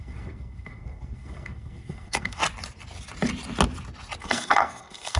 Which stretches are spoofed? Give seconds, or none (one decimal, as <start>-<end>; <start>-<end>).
0.0-2.4; 4.2-5.2